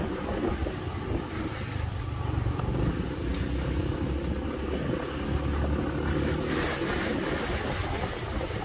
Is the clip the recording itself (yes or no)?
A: yes